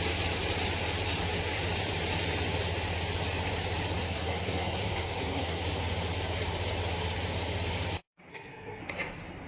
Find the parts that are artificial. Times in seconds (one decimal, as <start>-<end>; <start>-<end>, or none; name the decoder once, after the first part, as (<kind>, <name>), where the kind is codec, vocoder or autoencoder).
4.0-5.6 (codec, SNAC); 8.3-8.8